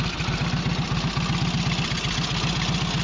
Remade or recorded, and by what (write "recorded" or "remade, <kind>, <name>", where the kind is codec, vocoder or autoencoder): recorded